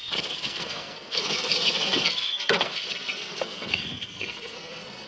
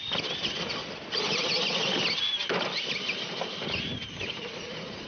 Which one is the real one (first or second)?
second